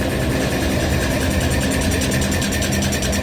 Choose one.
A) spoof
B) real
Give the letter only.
B